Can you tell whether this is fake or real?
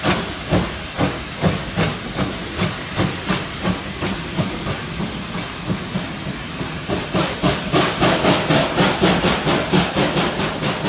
real